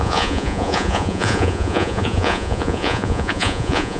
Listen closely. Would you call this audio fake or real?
fake